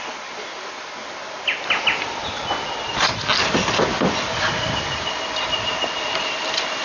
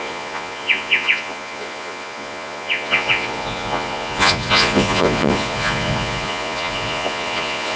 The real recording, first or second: first